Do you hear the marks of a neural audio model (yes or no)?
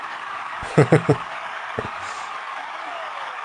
yes